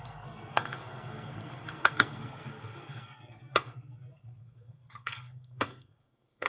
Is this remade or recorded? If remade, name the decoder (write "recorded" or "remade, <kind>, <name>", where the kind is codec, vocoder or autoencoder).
remade, codec, SNAC